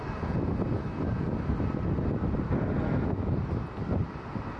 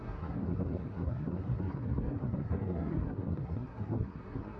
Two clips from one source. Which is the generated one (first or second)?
second